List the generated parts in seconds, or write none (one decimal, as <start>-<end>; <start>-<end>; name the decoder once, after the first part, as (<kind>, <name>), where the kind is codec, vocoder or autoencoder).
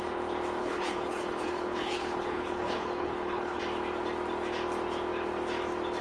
0.6-3.6 (codec, HILCodec)